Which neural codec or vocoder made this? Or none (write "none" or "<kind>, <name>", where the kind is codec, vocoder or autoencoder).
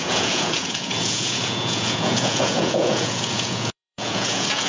vocoder, Vocos